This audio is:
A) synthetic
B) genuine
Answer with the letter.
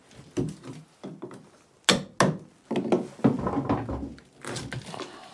B